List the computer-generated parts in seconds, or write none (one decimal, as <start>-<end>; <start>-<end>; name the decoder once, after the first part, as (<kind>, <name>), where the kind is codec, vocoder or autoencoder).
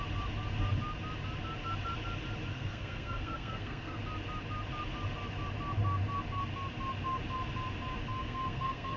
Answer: 2.5-4.0 (codec, SNAC); 8.1-9.0